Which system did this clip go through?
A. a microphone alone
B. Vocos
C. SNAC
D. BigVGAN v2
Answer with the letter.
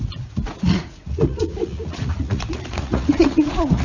B